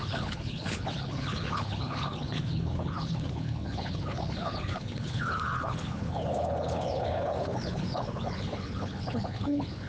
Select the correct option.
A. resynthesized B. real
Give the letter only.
A